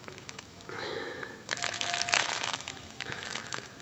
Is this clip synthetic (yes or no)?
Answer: yes